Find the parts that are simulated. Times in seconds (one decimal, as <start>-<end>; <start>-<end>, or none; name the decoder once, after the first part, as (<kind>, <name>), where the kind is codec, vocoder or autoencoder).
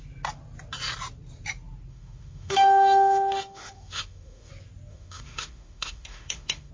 1.9-4.5 (autoencoder, DAC-VAE); 4.9-6.7